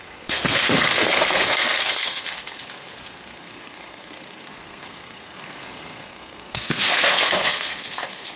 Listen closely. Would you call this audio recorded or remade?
remade